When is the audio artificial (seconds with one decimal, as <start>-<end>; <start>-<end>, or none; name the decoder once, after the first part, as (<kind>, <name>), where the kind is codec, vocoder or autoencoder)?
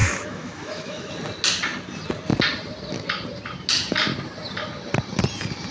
0.0-1.1 (autoencoder, DAC-VAE)